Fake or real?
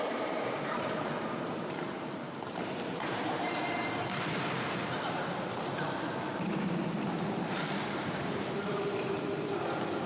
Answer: fake